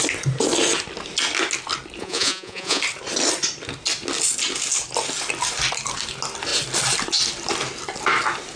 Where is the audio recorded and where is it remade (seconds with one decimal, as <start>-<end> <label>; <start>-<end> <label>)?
0.0-2.0 recorded; 2.0-2.8 remade; 2.8-8.6 recorded